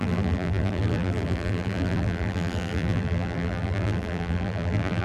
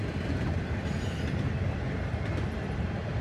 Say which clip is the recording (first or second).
second